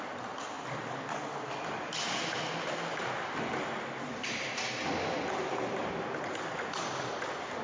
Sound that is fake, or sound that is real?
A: real